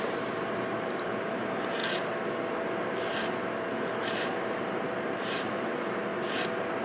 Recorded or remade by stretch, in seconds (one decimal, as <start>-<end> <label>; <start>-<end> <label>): 0.0-1.8 remade; 1.8-3.7 recorded; 3.7-6.1 remade; 6.1-6.8 recorded